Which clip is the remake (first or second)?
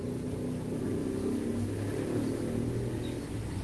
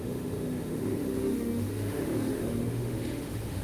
second